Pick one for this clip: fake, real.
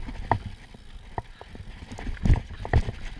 real